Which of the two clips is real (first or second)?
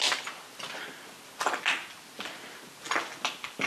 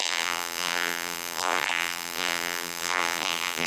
first